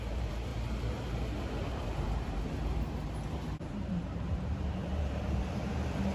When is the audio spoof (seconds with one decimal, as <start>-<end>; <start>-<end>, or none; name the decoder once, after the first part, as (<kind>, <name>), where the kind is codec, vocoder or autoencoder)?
0.0-0.5 (vocoder, BigVGAN v2); 1.7-6.1